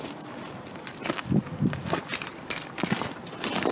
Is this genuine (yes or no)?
no